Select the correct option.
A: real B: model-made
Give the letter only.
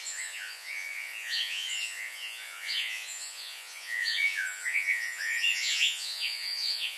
B